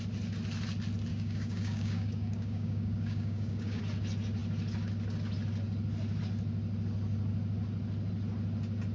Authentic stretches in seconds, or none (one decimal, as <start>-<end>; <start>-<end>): 0.0-1.1; 3.8-8.9